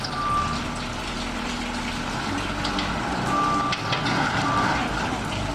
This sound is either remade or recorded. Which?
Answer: recorded